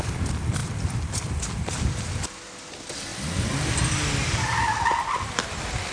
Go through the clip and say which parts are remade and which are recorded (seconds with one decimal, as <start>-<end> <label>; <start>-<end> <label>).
0.0-5.9 recorded